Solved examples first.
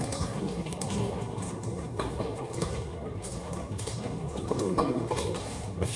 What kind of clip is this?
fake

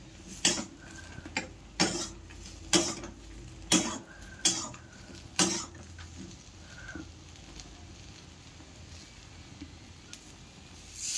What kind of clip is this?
real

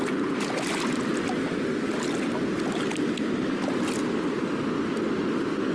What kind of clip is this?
real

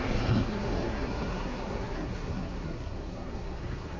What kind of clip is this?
fake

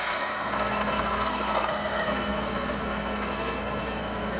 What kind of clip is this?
fake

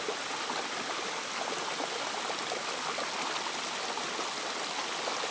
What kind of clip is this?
real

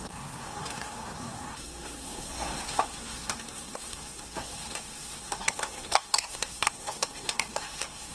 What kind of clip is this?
fake